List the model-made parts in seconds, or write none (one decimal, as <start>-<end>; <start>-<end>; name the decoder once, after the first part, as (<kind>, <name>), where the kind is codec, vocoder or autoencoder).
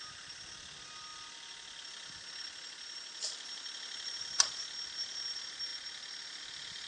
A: none